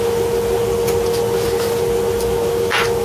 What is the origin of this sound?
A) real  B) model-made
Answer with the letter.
A